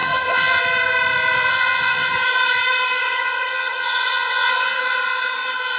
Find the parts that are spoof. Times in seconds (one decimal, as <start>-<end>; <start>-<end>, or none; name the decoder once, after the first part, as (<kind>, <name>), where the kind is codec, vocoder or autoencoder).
0.0-0.6 (vocoder, HiFi-GAN); 1.5-2.1; 3.0-4.5

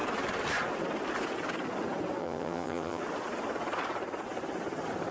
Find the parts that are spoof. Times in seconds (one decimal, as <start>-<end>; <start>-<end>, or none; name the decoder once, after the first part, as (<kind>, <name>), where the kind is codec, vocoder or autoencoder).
2.2-3.0 (vocoder, HiFi-GAN)

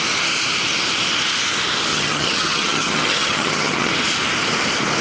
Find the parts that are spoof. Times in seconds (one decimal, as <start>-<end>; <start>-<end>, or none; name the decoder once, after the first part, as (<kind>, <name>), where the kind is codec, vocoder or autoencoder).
1.9-3.9 (vocoder, HiFi-GAN)

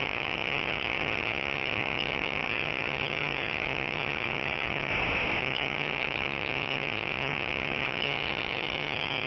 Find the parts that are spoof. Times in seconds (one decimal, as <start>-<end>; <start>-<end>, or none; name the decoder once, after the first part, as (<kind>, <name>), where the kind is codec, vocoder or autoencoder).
0.0-4.9 (vocoder, HiFi-GAN); 5.4-9.3

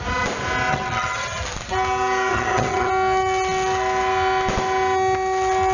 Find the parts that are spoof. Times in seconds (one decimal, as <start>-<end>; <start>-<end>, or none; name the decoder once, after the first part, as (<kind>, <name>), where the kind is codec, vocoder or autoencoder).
0.7-1.4 (vocoder, HiFi-GAN); 2.3-2.9

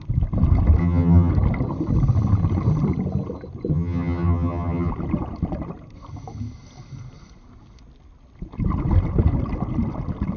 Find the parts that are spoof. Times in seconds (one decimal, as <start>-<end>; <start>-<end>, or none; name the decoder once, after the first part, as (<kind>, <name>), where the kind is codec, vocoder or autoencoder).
0.8-1.3 (vocoder, HiFi-GAN); 3.7-4.9

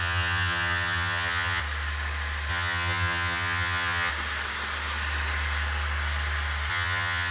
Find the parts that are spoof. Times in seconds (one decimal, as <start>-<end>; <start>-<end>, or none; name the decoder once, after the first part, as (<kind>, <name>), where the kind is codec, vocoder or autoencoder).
0.0-1.6 (vocoder, HiFi-GAN); 2.5-4.1; 6.7-7.3

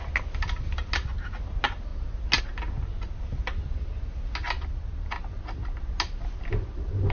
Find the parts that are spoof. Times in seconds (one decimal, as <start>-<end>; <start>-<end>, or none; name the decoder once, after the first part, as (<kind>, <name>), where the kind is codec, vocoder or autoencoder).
none